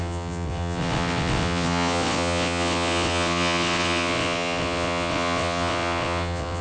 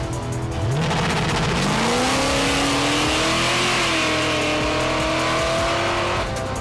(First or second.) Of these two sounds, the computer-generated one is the first